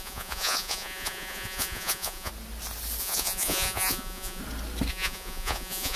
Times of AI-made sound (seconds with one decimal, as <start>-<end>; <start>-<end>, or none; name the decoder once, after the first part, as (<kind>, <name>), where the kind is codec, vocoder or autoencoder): 0.0-2.3 (vocoder, Vocos); 3.0-4.4; 4.9-6.0